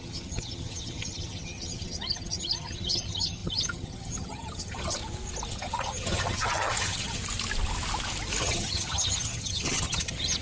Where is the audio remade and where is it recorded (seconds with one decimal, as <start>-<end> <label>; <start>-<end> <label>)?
0.0-5.0 remade; 5.0-5.5 recorded; 5.5-7.2 remade; 7.2-8.4 recorded; 8.4-10.4 remade